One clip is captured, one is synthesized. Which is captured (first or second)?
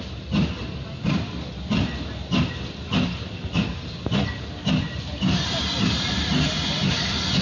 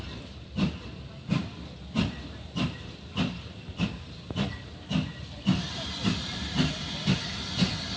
first